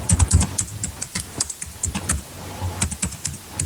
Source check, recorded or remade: recorded